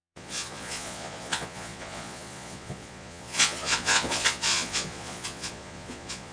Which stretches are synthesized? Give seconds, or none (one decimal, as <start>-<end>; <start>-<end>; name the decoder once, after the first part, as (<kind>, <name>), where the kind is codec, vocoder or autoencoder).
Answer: 0.0-6.3 (vocoder, Vocos)

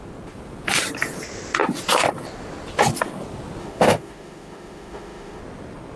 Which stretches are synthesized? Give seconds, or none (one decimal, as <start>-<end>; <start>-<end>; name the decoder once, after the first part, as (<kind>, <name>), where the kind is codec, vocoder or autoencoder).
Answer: 3.6-5.4 (autoencoder, DAC-VAE)

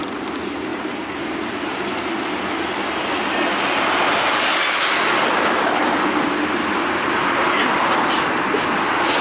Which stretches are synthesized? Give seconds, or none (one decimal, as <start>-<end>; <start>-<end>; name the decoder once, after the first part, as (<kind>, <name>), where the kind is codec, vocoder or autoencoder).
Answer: none